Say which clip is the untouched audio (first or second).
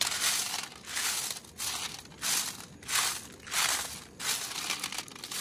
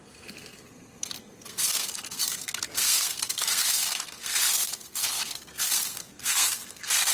first